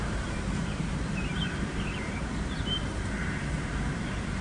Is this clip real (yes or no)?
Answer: no